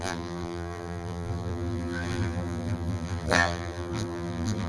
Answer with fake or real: fake